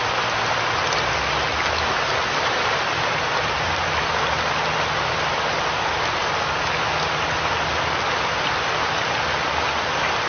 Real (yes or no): yes